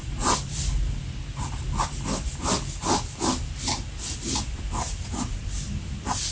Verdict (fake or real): real